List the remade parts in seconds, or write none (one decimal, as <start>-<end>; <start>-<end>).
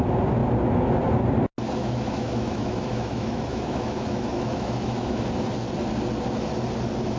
1.8-5.2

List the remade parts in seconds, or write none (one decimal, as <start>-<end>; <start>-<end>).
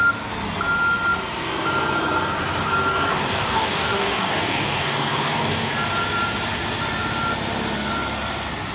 3.1-5.7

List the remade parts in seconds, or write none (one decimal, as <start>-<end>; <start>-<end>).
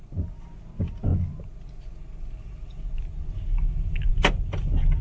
none